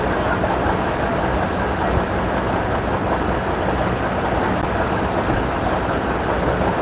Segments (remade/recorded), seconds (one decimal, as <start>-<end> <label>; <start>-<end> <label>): 0.0-6.8 recorded